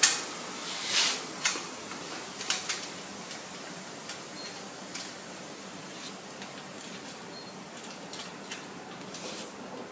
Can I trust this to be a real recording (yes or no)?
no